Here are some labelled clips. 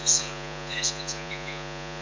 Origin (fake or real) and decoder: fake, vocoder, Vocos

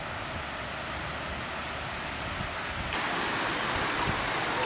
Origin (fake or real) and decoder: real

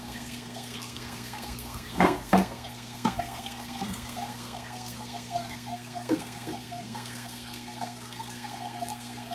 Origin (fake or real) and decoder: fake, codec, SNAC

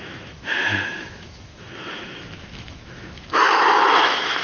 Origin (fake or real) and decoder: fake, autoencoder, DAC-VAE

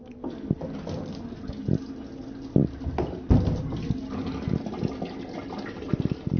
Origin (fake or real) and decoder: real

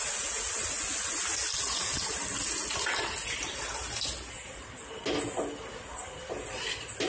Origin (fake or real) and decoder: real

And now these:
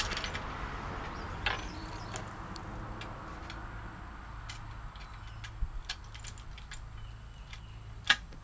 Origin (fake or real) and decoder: real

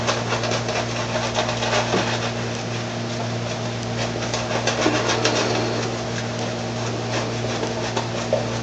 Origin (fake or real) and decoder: real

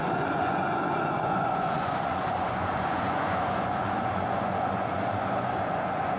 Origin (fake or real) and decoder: fake, vocoder, Vocos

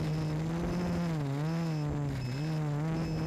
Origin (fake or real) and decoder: real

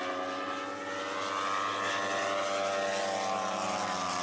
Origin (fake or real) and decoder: real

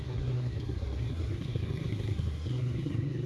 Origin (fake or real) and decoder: fake, codec, SNAC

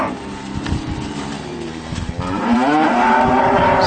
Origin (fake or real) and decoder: fake, vocoder, BigVGAN v2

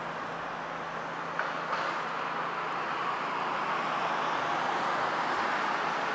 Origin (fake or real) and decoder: real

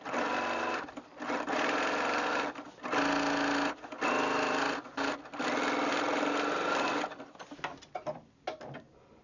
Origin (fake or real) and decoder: real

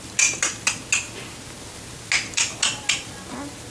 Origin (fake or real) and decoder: real